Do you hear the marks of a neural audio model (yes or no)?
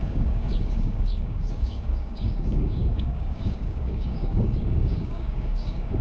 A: yes